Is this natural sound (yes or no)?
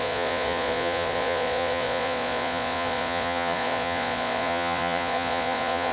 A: no